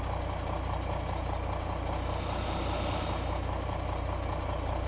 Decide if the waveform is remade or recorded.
recorded